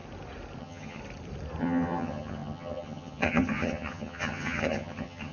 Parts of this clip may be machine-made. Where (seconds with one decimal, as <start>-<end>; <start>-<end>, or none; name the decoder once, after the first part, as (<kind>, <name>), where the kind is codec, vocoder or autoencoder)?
0.6-1.0 (vocoder, HiFi-GAN); 1.6-5.3